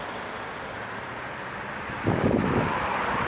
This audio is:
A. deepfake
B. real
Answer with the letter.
B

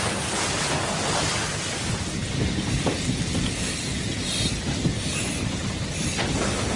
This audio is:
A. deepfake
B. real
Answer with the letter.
B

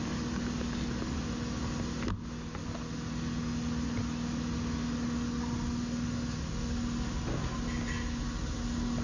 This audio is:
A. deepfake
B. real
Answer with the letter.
B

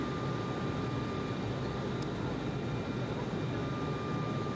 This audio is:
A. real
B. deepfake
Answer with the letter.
A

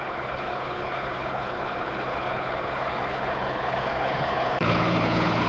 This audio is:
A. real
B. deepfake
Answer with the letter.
B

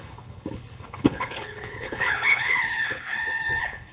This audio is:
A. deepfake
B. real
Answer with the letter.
A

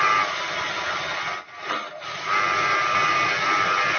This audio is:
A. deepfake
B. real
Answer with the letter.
B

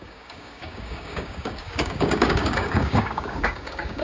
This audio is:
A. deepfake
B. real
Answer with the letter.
A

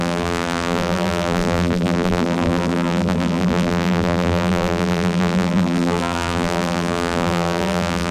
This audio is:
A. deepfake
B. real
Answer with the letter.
A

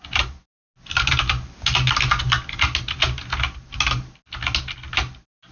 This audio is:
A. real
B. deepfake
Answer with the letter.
A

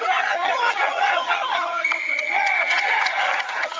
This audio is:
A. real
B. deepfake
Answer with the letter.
B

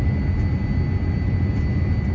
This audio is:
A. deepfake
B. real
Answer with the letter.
B